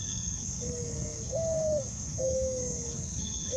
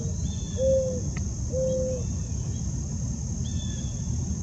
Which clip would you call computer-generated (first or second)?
first